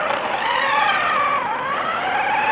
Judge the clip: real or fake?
real